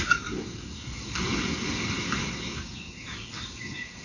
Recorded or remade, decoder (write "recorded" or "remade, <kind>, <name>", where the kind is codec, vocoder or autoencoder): remade, codec, DAC